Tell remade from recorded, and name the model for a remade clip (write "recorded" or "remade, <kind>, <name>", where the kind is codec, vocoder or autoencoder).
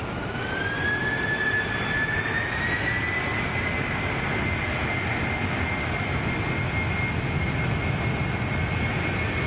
recorded